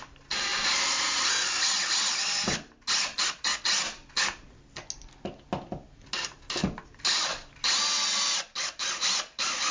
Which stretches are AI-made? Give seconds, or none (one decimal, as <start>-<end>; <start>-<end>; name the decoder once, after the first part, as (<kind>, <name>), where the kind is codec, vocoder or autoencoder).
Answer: none